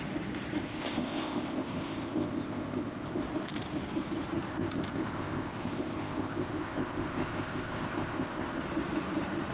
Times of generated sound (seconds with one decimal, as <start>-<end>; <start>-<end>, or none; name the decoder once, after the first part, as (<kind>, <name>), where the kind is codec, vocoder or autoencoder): 0.6-3.2 (codec, ZipCodec); 4.5-8.6